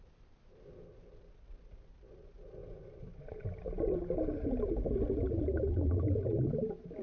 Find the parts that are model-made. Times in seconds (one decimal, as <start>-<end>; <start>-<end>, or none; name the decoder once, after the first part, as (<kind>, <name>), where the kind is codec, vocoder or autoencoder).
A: none